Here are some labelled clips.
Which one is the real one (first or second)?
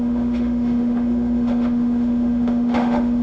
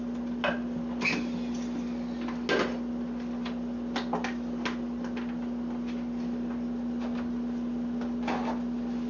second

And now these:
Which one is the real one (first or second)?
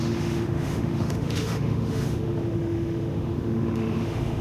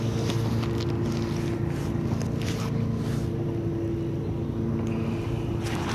second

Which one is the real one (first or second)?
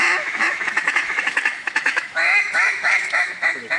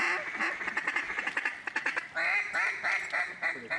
second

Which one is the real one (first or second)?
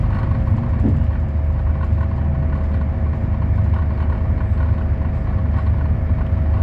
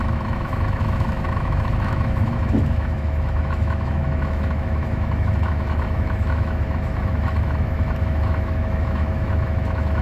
first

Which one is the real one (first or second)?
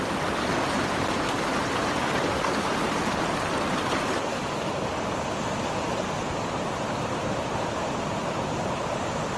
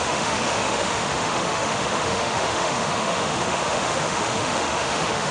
first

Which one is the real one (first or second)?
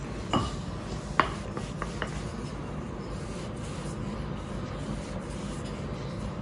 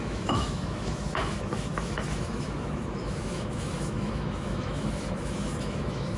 first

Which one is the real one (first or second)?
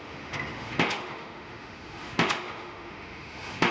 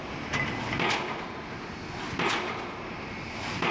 second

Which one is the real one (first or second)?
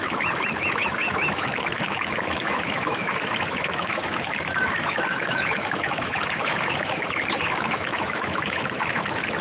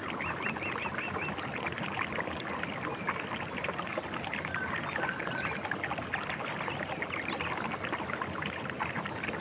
second